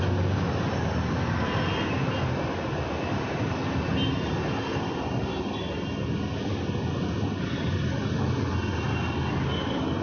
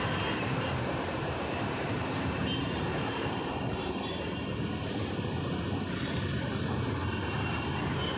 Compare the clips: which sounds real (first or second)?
first